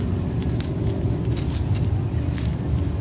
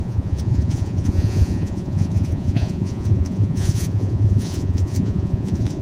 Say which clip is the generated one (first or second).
second